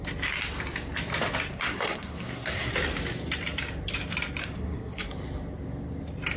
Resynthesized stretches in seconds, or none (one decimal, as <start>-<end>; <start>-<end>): 1.5-2.7; 4.4-5.1